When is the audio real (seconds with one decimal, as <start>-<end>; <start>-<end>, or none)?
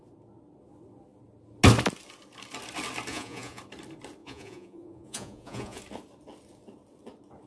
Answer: 0.0-3.1; 3.6-4.2; 5.8-7.5